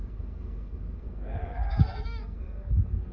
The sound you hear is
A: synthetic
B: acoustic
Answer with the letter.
A